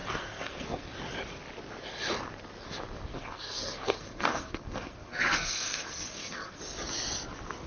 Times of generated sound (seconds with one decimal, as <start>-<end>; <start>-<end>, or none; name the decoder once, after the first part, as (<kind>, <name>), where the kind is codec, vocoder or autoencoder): 0.0-0.9 (codec, SNAC); 3.1-6.6